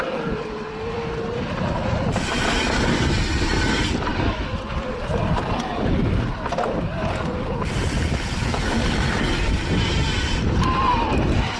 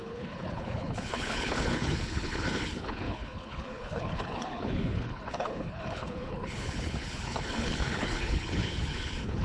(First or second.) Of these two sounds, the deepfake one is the second